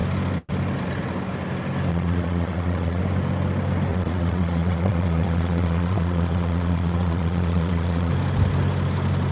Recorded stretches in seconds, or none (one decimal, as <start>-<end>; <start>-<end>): 0.0-1.9; 3.0-3.9; 8.1-9.3